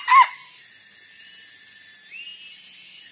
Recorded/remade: recorded